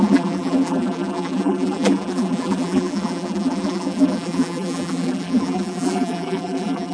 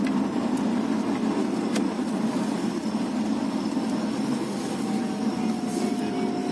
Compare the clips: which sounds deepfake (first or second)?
first